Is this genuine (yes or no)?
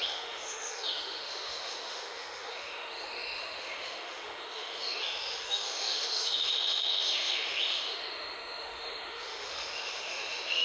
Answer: no